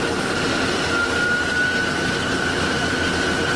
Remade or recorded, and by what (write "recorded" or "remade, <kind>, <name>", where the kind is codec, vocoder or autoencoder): recorded